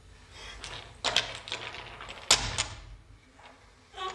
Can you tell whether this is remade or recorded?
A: recorded